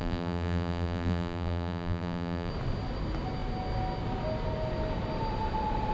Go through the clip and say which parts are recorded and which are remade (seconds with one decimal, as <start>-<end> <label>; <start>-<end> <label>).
0.0-2.5 remade; 2.5-5.9 recorded